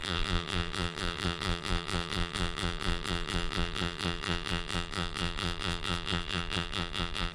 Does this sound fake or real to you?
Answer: fake